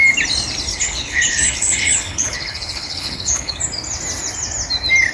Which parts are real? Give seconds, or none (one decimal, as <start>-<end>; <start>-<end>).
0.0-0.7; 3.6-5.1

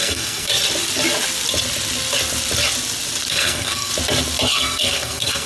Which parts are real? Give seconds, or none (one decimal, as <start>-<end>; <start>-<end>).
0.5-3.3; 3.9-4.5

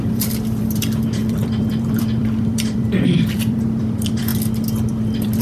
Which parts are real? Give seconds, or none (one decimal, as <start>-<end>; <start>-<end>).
none

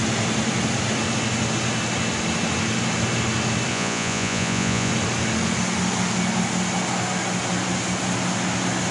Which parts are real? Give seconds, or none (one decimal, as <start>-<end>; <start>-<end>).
0.0-3.7; 4.9-8.9

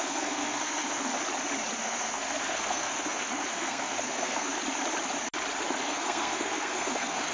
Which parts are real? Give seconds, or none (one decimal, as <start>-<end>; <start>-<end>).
1.1-1.8; 4.5-5.8